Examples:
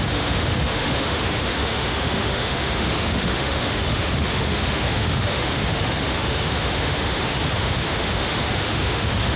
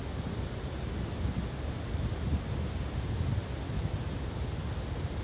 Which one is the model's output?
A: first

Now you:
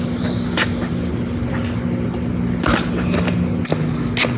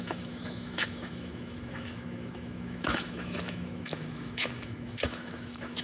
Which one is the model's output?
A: second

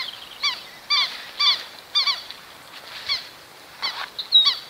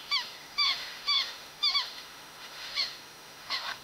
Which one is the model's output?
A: second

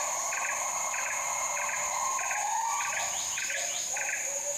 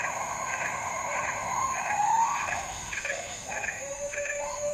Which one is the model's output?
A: second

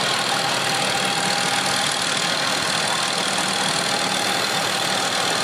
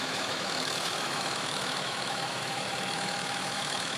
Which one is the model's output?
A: second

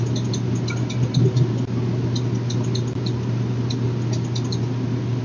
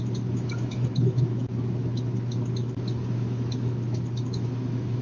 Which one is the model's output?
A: second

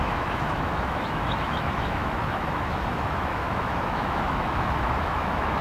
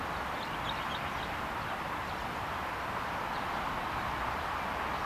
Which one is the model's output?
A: first